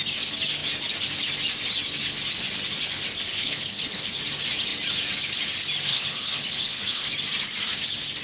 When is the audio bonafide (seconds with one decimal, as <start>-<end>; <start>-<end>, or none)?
0.0-3.3; 4.2-5.9; 7.1-8.2